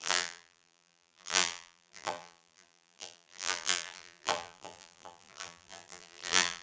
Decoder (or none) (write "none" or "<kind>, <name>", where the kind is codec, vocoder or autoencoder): vocoder, BigVGAN v2